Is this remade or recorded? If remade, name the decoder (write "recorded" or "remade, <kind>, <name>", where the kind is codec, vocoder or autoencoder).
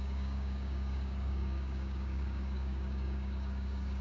remade, codec, DAC